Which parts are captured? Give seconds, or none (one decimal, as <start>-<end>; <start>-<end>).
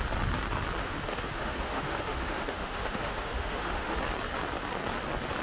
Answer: 0.0-0.8; 4.0-5.4